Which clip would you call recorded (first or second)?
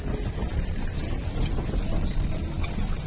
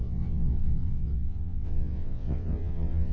first